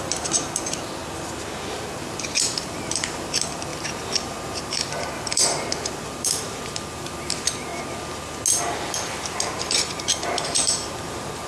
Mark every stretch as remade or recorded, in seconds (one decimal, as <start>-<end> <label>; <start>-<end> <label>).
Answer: 0.0-1.0 remade; 1.0-1.7 recorded; 1.7-7.7 remade; 7.7-8.6 recorded; 8.6-11.5 remade